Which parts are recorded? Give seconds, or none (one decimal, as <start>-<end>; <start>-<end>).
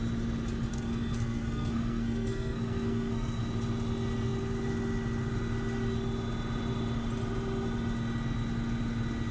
0.0-0.7; 3.4-9.3